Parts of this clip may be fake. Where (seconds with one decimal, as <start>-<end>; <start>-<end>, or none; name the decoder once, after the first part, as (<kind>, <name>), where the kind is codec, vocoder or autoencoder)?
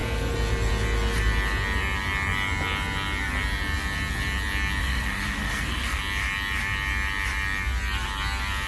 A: 4.8-6.0 (codec, SNAC)